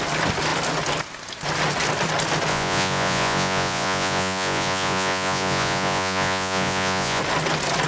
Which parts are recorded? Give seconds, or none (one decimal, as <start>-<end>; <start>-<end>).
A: 0.0-2.5; 7.2-7.9